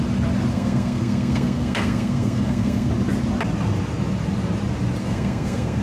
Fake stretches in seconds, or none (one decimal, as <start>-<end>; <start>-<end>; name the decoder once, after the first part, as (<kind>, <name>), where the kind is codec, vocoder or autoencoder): 0.5-2.9 (codec, SNAC); 5.0-5.8